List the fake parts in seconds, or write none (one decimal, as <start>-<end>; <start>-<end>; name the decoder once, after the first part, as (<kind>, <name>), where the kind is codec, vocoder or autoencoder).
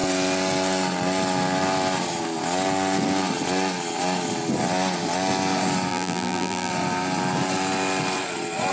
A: 5.9-6.7 (vocoder, BigVGAN v2)